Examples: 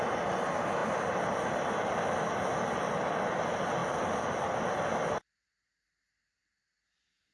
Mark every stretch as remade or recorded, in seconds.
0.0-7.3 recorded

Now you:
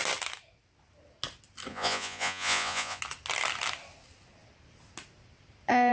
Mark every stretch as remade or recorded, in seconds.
0.0-1.7 recorded; 1.7-3.0 remade; 3.0-5.9 recorded

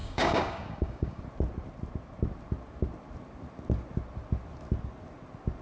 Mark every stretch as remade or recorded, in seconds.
0.0-1.2 remade; 1.2-5.6 recorded

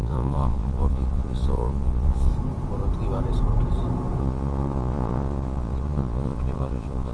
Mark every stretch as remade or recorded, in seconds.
0.0-2.3 remade; 2.3-4.2 recorded; 4.2-7.1 remade

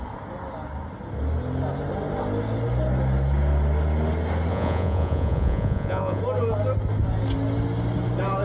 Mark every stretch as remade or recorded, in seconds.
0.0-4.5 recorded; 4.5-6.2 remade; 6.2-8.4 recorded